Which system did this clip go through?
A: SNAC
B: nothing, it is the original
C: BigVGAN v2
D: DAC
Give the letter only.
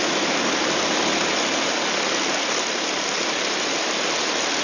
B